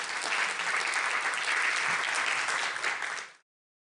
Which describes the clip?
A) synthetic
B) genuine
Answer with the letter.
B